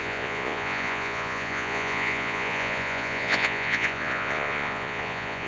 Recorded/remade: remade